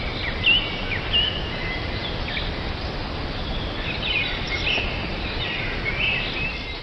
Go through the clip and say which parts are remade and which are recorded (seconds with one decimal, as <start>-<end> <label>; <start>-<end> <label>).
0.0-6.8 recorded